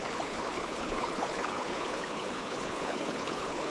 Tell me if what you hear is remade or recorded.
remade